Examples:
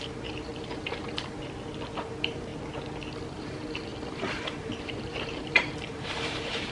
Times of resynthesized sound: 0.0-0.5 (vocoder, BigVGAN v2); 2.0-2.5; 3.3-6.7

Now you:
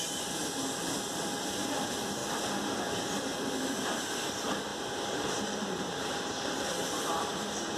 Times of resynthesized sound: 4.7-6.6 (vocoder, BigVGAN v2)

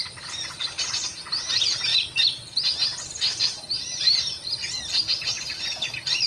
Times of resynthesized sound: 0.0-6.3 (vocoder, BigVGAN v2)

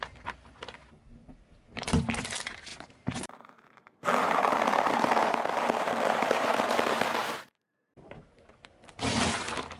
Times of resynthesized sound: 2.7-6.6 (vocoder, BigVGAN v2); 7.2-8.4